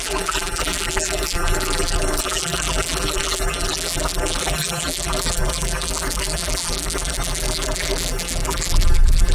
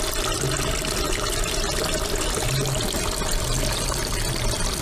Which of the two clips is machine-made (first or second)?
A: first